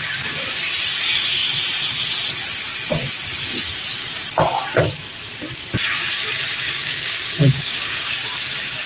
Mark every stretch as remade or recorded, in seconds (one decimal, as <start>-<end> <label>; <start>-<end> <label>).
0.0-6.6 recorded; 6.6-8.1 remade; 8.1-8.9 recorded